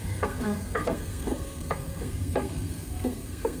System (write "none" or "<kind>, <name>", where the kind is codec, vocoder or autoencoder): codec, SNAC